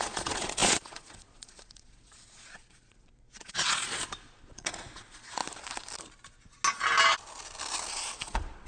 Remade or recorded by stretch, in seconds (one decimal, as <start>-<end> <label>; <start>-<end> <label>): 0.0-5.4 remade; 5.4-8.2 recorded; 8.2-8.7 remade